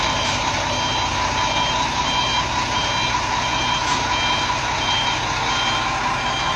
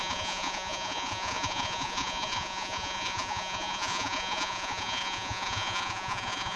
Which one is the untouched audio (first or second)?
first